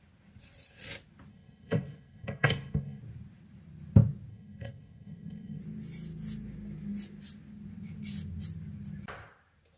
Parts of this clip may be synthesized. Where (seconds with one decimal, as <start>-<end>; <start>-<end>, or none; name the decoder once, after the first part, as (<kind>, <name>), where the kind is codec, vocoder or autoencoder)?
1.3-3.0 (codec, SNAC); 4.3-5.6